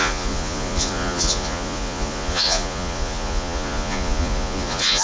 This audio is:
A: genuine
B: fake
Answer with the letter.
B